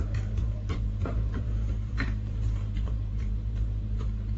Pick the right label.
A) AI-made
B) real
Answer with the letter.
A